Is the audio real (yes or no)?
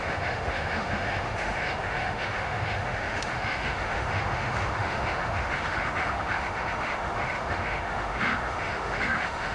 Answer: no